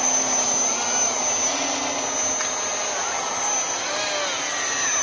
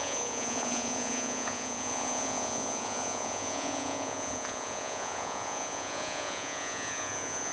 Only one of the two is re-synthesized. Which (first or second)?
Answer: second